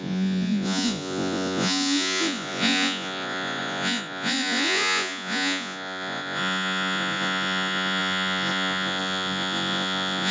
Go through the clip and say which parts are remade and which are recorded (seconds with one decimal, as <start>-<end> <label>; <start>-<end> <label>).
0.0-10.3 remade